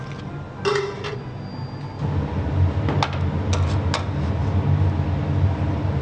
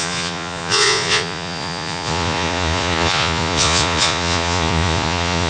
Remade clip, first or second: second